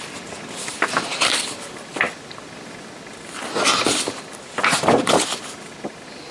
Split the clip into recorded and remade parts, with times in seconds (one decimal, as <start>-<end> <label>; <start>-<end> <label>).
0.0-6.3 recorded